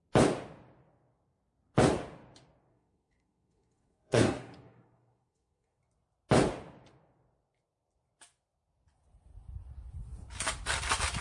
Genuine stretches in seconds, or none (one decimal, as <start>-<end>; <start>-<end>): 0.0-2.7; 5.8-11.2